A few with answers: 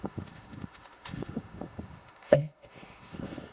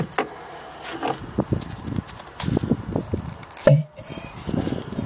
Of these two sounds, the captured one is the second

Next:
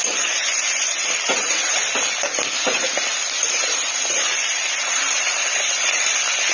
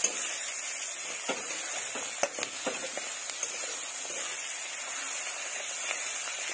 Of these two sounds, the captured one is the second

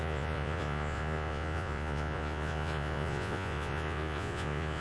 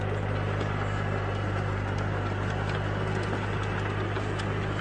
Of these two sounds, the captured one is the second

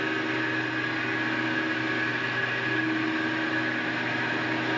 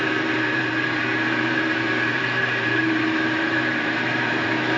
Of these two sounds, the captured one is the first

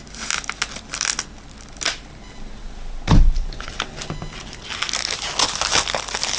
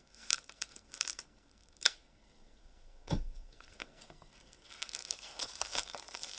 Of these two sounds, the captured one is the first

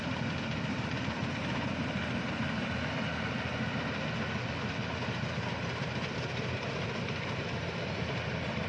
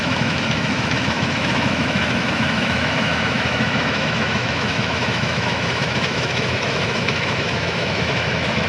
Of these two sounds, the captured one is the first